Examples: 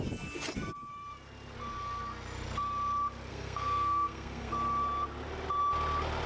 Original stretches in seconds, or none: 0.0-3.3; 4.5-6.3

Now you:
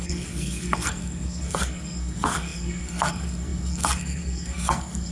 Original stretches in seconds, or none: none